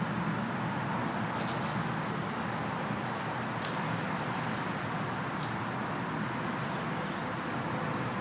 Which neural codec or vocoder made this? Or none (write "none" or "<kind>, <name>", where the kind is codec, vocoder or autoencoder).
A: none